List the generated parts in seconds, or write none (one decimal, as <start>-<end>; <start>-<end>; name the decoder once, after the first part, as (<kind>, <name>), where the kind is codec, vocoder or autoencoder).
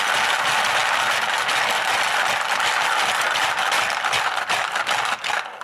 none